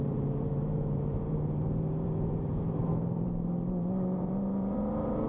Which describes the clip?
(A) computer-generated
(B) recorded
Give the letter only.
A